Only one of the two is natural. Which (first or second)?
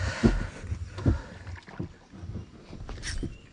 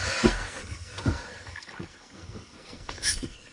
first